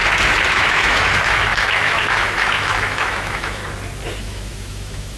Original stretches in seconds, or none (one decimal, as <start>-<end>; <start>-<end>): 0.0-0.5; 3.6-4.2